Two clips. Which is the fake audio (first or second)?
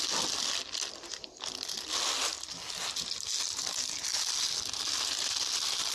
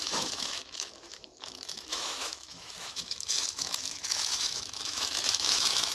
second